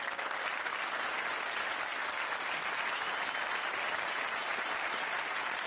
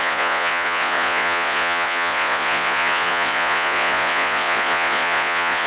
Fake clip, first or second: second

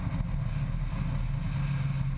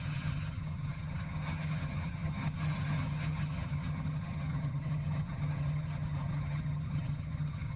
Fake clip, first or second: second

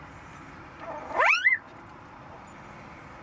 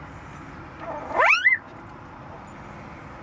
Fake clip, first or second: first